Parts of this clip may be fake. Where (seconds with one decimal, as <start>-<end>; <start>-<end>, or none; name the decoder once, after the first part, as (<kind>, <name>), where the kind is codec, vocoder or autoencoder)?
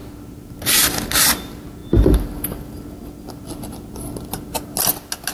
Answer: none